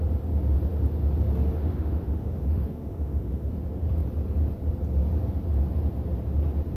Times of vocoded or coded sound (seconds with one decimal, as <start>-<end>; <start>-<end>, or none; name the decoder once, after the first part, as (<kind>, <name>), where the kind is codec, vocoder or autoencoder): 1.6-3.5 (autoencoder, DAC-VAE)